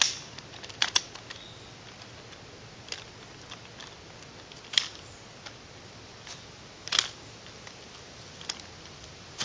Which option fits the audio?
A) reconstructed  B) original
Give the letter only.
B